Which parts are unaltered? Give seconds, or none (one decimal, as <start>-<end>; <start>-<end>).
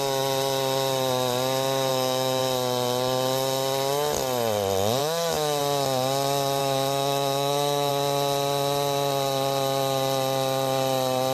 0.0-1.9; 2.4-5.0; 5.6-6.6; 7.9-11.3